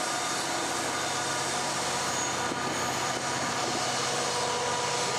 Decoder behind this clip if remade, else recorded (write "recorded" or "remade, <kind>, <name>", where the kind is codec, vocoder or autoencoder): recorded